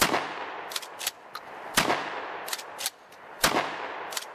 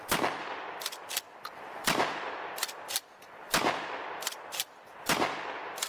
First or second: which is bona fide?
first